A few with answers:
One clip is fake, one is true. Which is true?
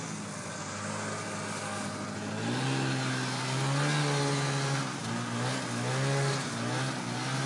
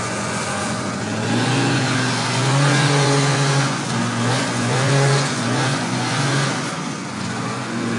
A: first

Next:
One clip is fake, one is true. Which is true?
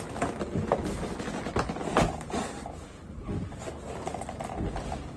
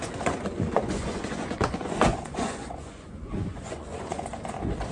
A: first